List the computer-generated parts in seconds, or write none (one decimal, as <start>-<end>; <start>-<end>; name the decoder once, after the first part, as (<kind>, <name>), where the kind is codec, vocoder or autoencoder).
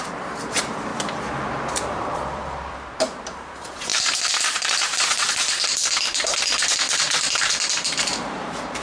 0.0-0.9 (vocoder, BigVGAN v2); 1.7-8.8